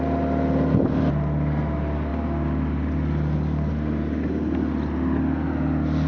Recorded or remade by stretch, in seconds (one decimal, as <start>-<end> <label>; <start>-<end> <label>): 0.0-6.1 recorded